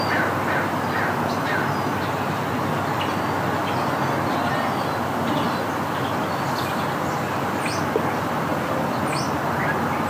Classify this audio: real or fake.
real